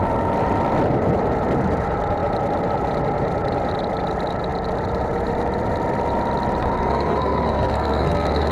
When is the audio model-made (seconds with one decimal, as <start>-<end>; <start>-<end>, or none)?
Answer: 6.6-8.5

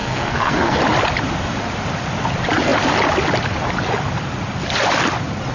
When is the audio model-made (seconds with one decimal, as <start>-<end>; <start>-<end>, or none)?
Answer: 0.0-0.8

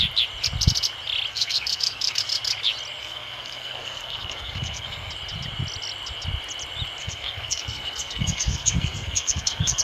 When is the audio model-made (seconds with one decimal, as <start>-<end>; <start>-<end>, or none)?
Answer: 1.3-2.2; 3.0-5.1; 7.0-9.8

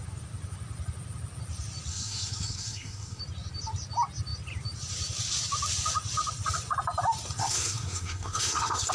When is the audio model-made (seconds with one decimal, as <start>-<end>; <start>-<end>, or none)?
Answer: 1.9-3.2; 7.4-8.9

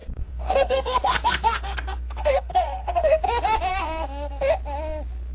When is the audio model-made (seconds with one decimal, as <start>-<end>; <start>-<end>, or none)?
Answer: 0.0-3.2; 3.7-4.4

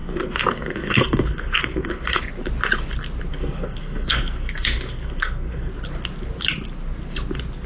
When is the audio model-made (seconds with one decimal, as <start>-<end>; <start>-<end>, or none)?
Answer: 0.0-2.2; 3.3-5.7

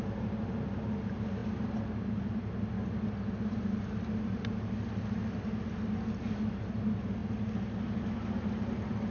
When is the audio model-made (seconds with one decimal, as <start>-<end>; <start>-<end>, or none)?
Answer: none